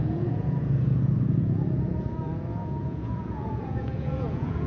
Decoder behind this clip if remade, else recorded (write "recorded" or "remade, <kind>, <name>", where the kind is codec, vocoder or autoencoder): remade, vocoder, Vocos